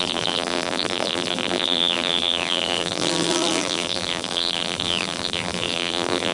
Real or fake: fake